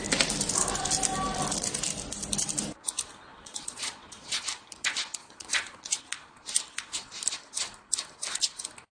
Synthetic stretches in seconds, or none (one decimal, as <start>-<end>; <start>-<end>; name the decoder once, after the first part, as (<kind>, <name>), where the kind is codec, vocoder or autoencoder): 3.3-4.4 (vocoder, Vocos); 5.2-6.0

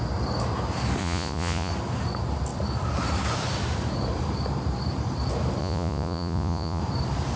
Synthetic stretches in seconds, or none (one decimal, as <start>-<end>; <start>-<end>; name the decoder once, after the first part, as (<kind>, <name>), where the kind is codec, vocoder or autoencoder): 1.0-1.7 (vocoder, Vocos); 5.6-6.8

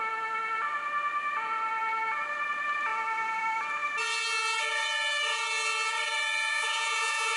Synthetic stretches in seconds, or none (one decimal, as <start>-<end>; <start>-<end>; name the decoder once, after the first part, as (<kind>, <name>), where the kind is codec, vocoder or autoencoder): 6.5-7.4 (vocoder, Vocos)

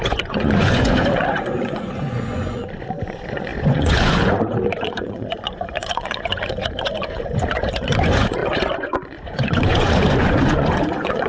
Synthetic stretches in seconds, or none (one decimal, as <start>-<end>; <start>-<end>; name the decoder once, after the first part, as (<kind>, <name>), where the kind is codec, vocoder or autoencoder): 0.0-11.3 (vocoder, Vocos)

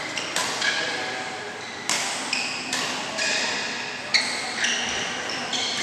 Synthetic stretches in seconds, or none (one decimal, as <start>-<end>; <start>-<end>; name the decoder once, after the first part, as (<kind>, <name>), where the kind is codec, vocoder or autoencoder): none